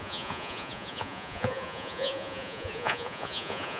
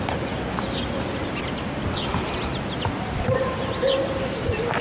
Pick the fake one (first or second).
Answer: first